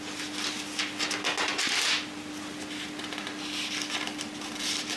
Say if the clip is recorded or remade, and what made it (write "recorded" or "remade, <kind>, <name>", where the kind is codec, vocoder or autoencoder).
recorded